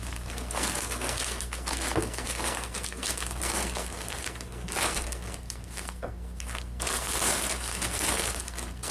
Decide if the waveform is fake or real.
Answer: fake